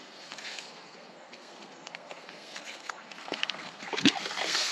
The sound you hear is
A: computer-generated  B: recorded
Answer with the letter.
A